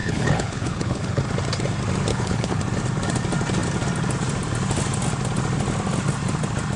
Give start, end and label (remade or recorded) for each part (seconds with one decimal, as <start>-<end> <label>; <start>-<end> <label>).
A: 0.0-1.2 remade; 1.2-2.1 recorded; 2.1-2.6 remade; 2.6-6.8 recorded